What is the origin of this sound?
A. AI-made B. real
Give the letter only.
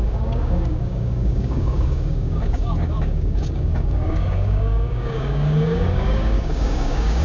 A